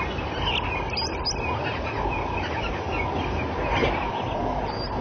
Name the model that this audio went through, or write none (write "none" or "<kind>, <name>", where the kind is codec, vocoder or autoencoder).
none